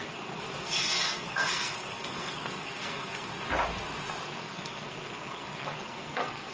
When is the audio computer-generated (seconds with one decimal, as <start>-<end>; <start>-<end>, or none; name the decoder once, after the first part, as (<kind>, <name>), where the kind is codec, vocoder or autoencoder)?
0.0-3.3 (codec, SNAC); 4.4-6.5